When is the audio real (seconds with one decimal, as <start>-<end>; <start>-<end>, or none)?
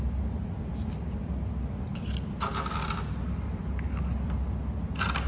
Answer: 0.0-5.3